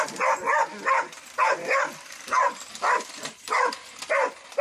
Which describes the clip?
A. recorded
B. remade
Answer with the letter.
A